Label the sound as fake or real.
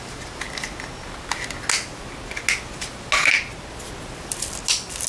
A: real